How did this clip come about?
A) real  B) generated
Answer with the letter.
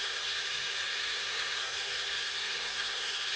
B